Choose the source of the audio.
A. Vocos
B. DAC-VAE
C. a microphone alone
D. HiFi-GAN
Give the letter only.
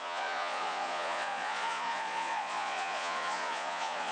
A